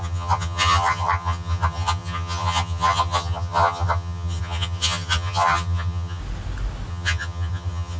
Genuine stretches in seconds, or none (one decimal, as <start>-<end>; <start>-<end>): 6.2-6.9